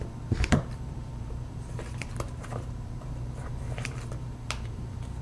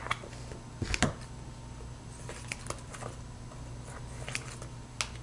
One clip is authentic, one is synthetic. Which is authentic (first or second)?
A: second